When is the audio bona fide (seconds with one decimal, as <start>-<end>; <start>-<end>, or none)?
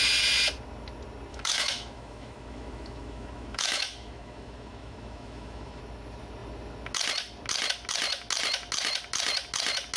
0.0-1.3; 5.8-10.0